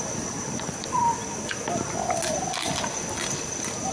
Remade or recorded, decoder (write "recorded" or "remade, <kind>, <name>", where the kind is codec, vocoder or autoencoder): recorded